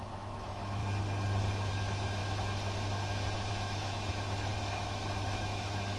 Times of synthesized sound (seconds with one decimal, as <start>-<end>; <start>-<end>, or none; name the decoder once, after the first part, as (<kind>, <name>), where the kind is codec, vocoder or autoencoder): 0.0-0.8 (autoencoder, DAC-VAE); 1.7-2.2; 3.5-6.0